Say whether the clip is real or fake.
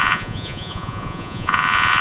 fake